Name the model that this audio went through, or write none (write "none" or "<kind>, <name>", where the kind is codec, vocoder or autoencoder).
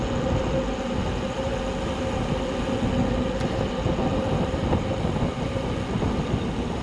none